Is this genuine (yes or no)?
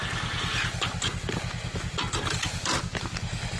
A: yes